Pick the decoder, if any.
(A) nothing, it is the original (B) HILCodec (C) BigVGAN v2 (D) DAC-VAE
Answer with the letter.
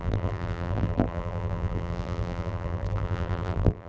C